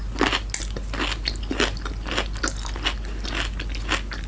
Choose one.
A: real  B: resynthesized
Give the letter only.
A